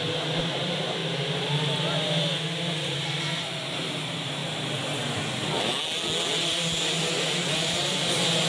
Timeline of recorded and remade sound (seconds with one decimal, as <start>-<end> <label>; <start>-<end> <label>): 0.0-1.0 remade; 1.0-2.8 recorded; 2.8-4.4 remade; 4.4-7.5 recorded; 7.5-8.5 remade

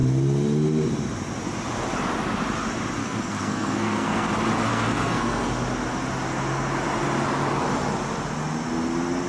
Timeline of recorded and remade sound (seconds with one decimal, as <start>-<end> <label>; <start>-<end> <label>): 0.0-3.0 recorded; 3.0-4.3 remade; 4.3-4.7 recorded; 4.7-5.5 remade; 5.5-9.3 recorded

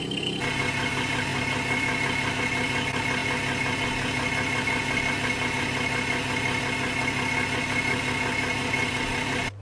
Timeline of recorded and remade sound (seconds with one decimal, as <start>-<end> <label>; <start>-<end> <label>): 0.0-9.6 recorded

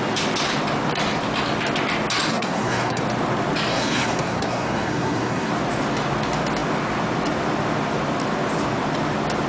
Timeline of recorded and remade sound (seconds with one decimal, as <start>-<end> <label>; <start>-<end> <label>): 0.0-2.3 recorded; 2.3-3.0 remade; 3.0-3.7 recorded; 3.7-5.5 remade; 5.5-9.5 recorded

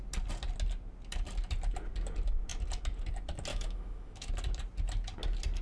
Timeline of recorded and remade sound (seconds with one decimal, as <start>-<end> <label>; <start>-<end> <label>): 0.0-3.5 recorded; 3.5-4.3 remade; 4.3-5.6 recorded

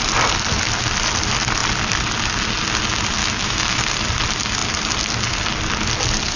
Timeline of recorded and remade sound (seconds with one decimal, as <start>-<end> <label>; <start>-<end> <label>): 0.0-3.2 recorded; 3.2-3.8 remade; 3.8-6.4 recorded

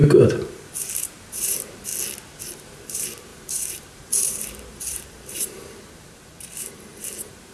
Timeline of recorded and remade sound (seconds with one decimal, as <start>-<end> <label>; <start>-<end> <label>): 0.0-1.9 remade; 1.9-2.4 recorded; 2.4-7.5 remade

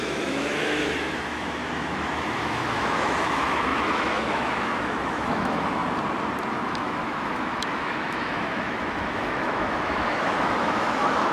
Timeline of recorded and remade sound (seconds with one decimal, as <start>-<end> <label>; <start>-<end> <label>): 0.0-5.8 remade; 5.8-6.5 recorded; 6.5-11.3 remade